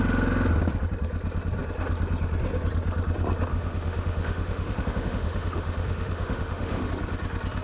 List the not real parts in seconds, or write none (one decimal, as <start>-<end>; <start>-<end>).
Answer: 3.5-6.9